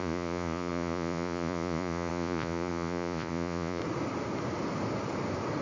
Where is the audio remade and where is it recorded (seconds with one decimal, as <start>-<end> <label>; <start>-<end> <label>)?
0.0-3.8 remade; 3.8-5.6 recorded